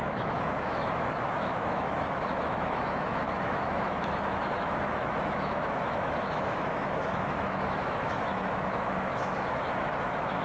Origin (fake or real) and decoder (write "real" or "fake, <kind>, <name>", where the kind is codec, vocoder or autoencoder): fake, autoencoder, DAC-VAE